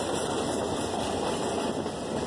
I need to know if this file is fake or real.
real